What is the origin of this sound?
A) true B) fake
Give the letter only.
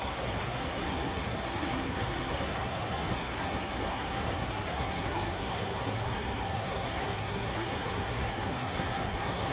B